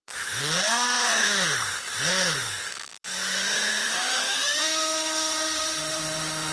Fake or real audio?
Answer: fake